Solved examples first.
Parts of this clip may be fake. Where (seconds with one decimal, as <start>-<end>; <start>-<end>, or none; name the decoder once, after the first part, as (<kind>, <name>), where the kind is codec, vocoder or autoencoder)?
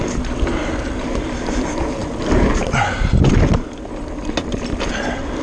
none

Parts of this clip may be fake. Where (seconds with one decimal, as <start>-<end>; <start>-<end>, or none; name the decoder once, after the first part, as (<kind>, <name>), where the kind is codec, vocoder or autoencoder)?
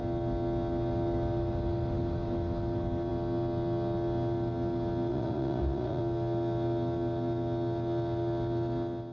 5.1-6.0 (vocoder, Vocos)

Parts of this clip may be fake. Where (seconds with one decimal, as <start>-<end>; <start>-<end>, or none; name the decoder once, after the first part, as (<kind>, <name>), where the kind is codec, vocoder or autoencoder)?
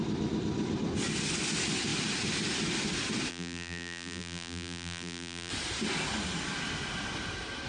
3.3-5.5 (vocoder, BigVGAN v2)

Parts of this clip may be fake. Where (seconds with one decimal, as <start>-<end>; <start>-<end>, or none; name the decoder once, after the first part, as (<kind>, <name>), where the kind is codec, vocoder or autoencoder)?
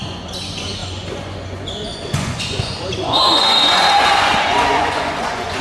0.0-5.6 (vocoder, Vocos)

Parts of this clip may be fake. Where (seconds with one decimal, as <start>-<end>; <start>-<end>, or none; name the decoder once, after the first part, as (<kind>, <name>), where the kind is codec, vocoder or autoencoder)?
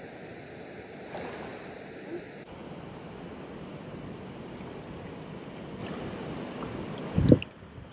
none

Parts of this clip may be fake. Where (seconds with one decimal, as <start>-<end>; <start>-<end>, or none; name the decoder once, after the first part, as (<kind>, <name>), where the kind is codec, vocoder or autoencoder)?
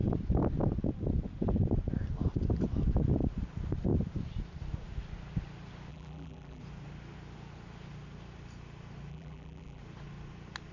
5.9-6.6 (vocoder, BigVGAN v2); 9.1-9.8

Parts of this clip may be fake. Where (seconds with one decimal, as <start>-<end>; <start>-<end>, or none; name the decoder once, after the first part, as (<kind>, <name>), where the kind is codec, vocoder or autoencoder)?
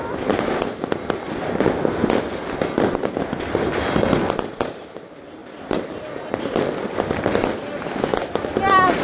none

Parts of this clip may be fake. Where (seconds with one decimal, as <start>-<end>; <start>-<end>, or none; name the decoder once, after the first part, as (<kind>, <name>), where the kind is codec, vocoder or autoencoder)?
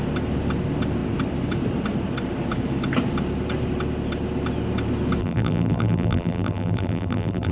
5.2-7.5 (vocoder, BigVGAN v2)